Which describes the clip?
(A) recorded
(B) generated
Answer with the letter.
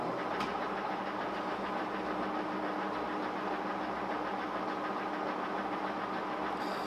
A